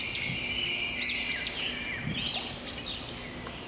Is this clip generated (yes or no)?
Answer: no